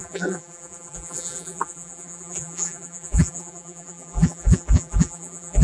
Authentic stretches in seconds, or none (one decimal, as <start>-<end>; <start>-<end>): none